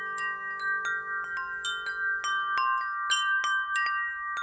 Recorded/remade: recorded